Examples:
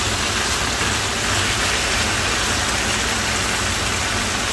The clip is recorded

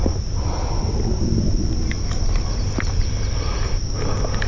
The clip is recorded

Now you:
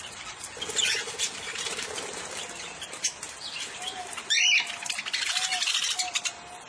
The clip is recorded